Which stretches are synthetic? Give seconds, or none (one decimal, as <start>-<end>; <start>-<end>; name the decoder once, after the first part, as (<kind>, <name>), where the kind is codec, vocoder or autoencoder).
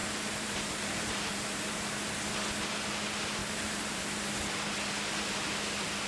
0.0-1.7 (vocoder, BigVGAN v2); 3.4-4.0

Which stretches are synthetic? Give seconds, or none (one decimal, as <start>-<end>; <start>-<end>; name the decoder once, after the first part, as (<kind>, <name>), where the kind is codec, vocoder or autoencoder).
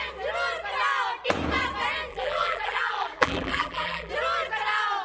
2.1-4.1 (vocoder, BigVGAN v2)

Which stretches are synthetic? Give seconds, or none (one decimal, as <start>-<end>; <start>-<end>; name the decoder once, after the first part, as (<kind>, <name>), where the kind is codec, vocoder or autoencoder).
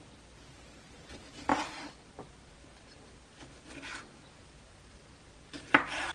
1.5-2.3 (vocoder, BigVGAN v2)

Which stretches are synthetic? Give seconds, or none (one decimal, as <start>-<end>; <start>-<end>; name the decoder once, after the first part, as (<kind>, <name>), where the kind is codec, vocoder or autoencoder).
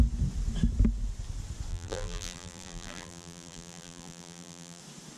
1.7-4.8 (vocoder, BigVGAN v2)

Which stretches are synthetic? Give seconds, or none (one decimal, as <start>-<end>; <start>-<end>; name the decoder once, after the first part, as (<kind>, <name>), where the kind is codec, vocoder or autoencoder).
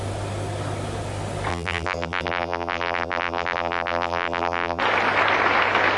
1.5-4.8 (vocoder, BigVGAN v2)